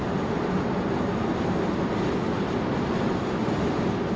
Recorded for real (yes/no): yes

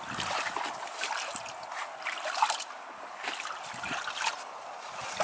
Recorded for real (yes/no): yes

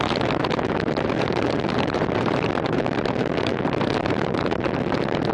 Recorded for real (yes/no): no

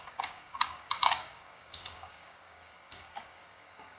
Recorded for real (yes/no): no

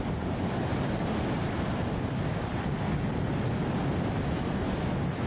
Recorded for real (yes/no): yes